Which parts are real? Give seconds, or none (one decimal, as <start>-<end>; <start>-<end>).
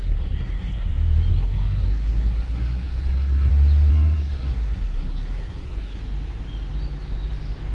0.9-1.3; 3.5-3.9; 6.0-7.7